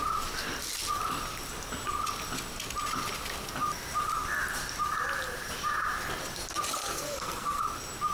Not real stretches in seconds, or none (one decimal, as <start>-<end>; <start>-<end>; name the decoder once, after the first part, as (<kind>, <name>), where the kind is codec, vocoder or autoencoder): 6.8-7.6 (codec, SNAC)